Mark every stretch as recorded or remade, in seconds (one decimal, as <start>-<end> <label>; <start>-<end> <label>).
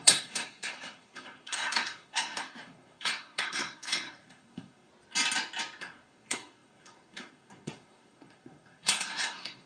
0.0-4.9 remade; 4.9-5.8 recorded; 5.8-9.7 remade